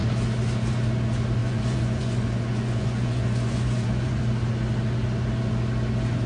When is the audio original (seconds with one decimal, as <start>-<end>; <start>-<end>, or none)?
0.0-1.4; 4.2-6.3